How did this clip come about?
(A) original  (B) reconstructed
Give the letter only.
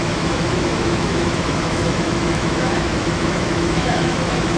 B